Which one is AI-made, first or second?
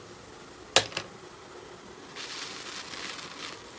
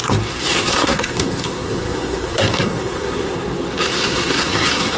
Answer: second